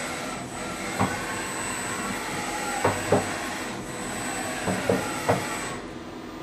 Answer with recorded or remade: recorded